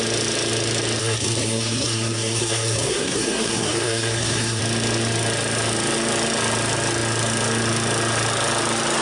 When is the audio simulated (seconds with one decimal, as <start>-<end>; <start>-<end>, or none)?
1.0-4.6